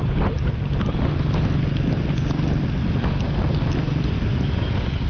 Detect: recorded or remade recorded